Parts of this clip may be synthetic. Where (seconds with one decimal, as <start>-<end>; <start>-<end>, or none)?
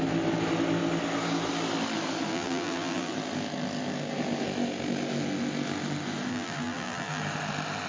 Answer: 2.3-3.1; 6.3-7.2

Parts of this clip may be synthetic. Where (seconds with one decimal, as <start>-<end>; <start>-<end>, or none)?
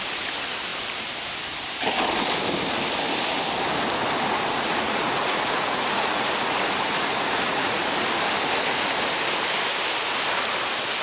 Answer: 4.5-7.9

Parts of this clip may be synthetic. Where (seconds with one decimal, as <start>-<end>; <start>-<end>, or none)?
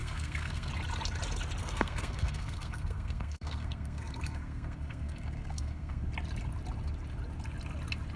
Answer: 0.0-0.7; 1.6-6.0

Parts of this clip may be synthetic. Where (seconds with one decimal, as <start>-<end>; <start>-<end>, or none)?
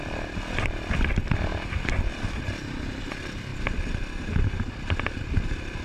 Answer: none